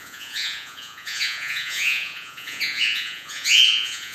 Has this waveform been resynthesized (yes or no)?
yes